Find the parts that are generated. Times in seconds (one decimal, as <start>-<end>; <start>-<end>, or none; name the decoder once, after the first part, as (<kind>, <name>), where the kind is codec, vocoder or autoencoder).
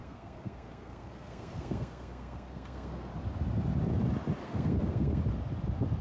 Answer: 0.0-3.1 (codec, SNAC); 4.4-5.2